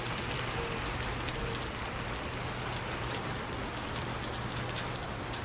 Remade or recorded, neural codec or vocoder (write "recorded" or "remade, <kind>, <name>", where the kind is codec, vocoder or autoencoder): recorded